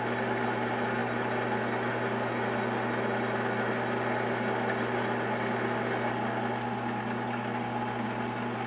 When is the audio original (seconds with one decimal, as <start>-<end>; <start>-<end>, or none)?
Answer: 0.0-8.7